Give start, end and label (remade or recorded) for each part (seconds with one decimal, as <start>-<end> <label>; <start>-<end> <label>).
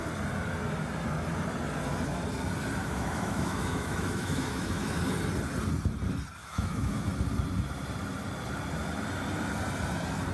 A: 0.0-2.8 recorded; 2.8-5.0 remade; 5.0-6.4 recorded; 6.4-7.1 remade; 7.1-10.3 recorded